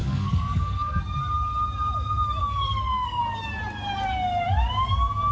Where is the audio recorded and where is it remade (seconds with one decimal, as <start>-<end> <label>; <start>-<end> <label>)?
0.0-1.0 remade; 1.0-2.4 recorded; 2.4-3.2 remade; 3.2-5.3 recorded